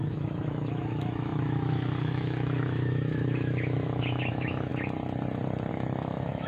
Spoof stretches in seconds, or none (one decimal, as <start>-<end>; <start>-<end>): 0.0-4.7; 5.7-6.5